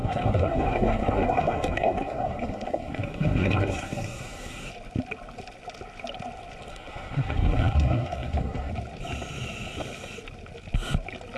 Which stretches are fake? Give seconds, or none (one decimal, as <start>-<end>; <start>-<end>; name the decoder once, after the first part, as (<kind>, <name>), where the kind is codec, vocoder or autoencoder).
0.0-4.7 (codec, SNAC); 6.7-8.7